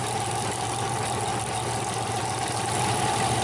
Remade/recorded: recorded